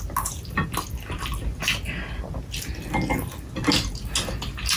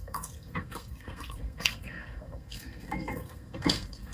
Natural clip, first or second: first